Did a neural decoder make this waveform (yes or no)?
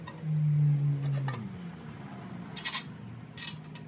no